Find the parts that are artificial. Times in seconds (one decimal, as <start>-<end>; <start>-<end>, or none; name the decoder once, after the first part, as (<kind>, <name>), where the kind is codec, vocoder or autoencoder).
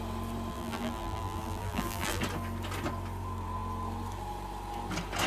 0.5-2.2 (vocoder, BigVGAN v2)